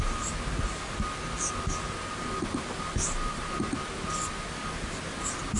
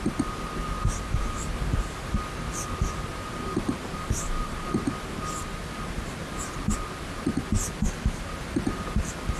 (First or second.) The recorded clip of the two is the first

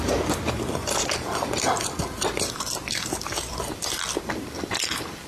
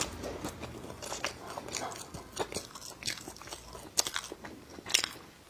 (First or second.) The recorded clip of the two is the second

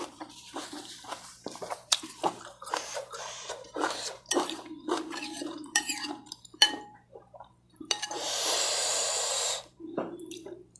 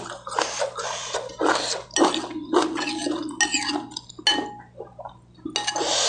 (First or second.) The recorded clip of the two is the second